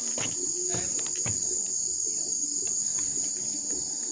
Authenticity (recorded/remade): recorded